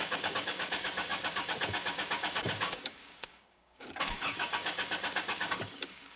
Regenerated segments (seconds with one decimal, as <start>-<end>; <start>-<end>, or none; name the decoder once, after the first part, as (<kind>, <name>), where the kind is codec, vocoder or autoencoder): 0.0-6.2 (codec, DAC)